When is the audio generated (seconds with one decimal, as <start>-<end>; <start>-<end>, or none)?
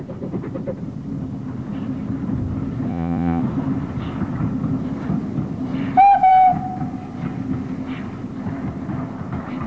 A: 2.9-3.4